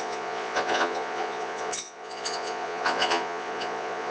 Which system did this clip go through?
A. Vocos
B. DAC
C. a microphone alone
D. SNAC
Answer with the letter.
A